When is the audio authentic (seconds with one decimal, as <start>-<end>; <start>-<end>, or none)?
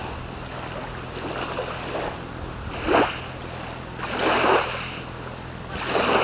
0.0-6.2